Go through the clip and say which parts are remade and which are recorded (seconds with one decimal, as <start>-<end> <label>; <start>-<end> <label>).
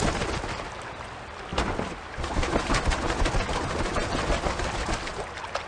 0.0-5.7 recorded